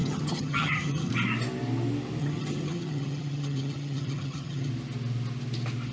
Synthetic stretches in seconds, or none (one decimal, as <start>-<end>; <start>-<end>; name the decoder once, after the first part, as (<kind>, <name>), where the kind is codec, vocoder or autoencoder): 0.0-1.1 (vocoder, HiFi-GAN); 2.2-4.7